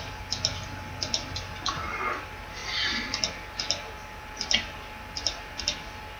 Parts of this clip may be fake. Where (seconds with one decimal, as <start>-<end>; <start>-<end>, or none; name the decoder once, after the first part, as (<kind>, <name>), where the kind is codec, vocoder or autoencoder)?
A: none